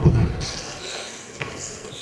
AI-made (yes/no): yes